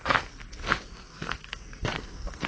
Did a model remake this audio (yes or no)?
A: yes